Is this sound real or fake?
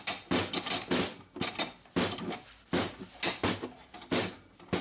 real